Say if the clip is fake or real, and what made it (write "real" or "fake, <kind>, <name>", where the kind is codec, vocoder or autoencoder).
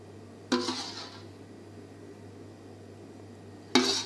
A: real